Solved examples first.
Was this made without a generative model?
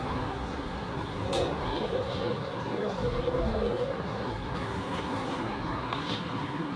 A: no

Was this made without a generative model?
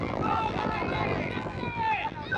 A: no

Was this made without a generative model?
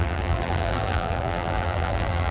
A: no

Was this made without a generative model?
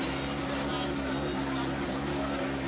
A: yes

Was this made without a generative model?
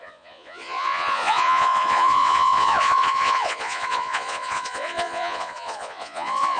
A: no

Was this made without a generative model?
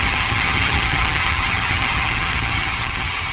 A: no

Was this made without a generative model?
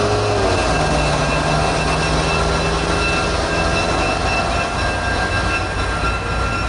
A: yes